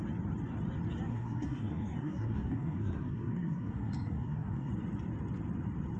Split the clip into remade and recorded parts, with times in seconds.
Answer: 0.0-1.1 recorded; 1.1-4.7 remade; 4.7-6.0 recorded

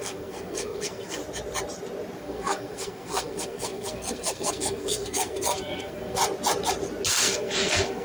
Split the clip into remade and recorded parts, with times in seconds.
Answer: 0.0-1.2 remade; 1.2-2.2 recorded; 2.2-6.2 remade; 6.2-7.1 recorded; 7.1-8.0 remade

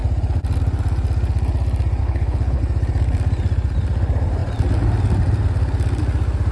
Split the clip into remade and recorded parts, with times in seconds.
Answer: 0.0-2.0 recorded; 2.0-2.6 remade; 2.6-6.5 recorded

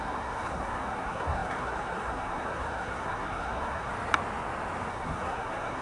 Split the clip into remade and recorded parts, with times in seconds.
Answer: 0.0-3.9 remade; 3.9-4.9 recorded; 4.9-5.8 remade

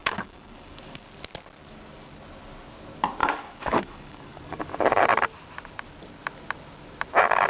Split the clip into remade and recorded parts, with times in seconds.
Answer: 0.0-1.0 remade; 1.0-3.2 recorded; 3.2-4.6 remade; 4.6-7.5 recorded

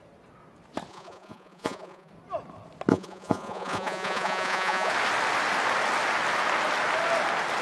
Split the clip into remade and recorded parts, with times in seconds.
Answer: 0.0-0.9 recorded; 0.9-2.1 remade; 2.1-2.9 recorded; 2.9-4.9 remade; 4.9-7.6 recorded

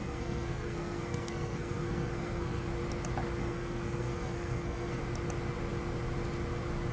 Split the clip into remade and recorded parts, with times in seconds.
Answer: 0.0-2.7 remade; 2.7-3.4 recorded; 3.4-5.0 remade; 5.0-6.9 recorded

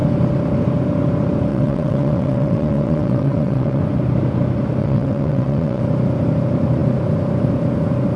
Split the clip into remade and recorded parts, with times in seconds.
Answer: 0.0-1.5 recorded; 1.5-3.8 remade; 3.8-4.8 recorded; 4.8-5.8 remade; 5.8-8.2 recorded